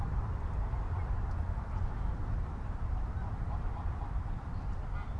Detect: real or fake real